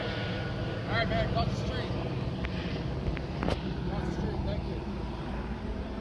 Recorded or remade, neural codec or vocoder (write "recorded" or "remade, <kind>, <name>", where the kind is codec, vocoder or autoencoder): recorded